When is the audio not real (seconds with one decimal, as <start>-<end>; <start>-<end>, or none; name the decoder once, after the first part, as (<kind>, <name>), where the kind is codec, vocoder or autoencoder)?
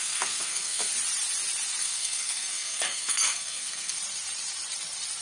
0.0-0.9 (codec, SNAC); 1.8-4.0